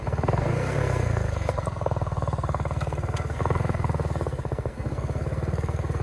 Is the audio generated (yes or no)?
yes